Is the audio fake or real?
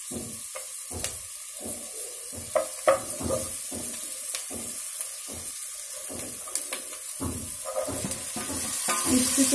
real